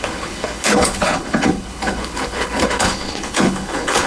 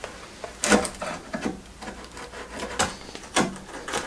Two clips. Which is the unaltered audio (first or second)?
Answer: second